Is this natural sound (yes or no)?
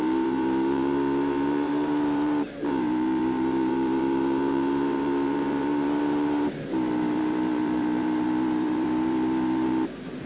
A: no